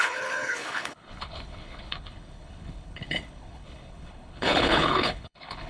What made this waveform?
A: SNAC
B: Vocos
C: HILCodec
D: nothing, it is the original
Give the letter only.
C